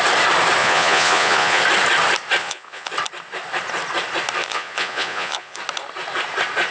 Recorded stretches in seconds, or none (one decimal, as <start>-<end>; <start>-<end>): 0.0-0.6; 1.6-2.4; 2.9-4.4; 5.6-6.7